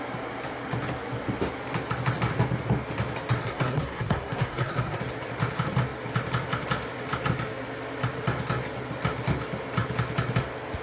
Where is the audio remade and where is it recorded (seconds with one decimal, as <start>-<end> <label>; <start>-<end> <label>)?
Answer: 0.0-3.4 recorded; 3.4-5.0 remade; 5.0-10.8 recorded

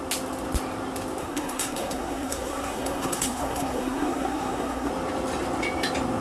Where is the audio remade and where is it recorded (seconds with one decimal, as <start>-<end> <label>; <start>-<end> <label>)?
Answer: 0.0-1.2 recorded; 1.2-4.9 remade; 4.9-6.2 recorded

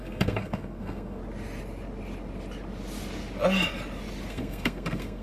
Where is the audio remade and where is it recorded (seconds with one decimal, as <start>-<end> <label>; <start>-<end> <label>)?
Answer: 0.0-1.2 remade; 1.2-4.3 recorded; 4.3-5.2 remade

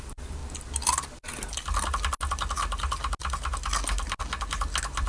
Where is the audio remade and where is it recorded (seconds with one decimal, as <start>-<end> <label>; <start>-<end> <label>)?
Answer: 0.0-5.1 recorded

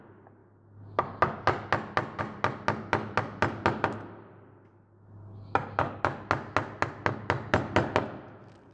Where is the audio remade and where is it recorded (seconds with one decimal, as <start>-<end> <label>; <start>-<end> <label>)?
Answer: 0.0-8.7 recorded